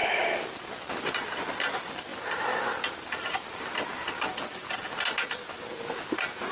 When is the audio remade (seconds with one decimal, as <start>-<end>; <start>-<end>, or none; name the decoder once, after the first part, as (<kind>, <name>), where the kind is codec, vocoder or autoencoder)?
none